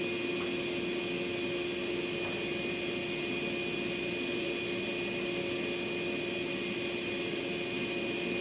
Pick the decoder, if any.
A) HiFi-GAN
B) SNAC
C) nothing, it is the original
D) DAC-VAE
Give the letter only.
C